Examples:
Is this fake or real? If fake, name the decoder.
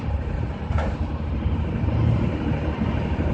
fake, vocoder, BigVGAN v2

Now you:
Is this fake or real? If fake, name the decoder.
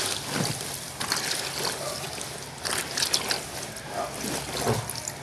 real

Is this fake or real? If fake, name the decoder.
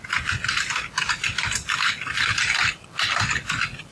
real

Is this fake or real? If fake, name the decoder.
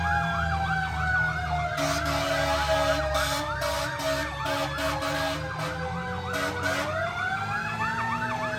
real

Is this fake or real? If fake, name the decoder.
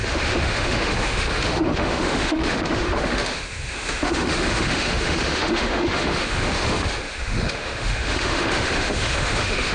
fake, autoencoder, DAC-VAE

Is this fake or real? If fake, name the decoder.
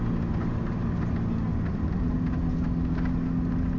real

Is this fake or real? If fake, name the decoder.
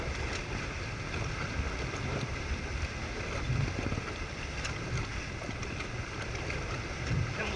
real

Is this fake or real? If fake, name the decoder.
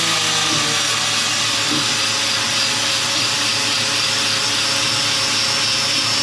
real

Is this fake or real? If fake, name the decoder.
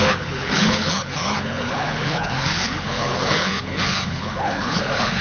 fake, codec, HILCodec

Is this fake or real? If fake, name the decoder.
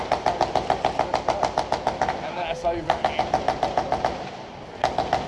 real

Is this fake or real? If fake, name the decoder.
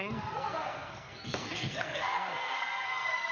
fake, codec, SNAC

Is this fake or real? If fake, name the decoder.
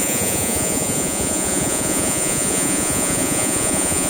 fake, vocoder, Vocos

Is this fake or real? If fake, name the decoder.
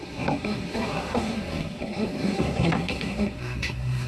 fake, codec, SNAC